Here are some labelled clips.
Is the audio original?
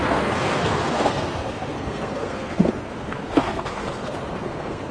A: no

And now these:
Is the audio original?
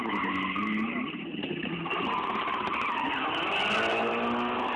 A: yes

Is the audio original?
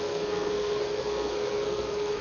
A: no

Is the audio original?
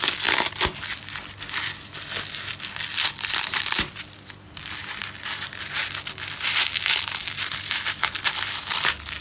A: yes